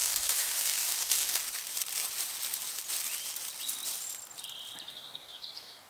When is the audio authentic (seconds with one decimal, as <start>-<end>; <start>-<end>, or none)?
1.4-4.9